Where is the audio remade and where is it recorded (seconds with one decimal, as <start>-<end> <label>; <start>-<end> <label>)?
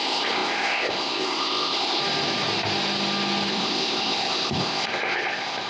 0.0-2.0 remade; 2.0-3.5 recorded; 3.5-5.7 remade